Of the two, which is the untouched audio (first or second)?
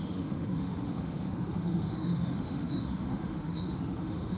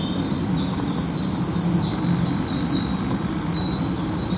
second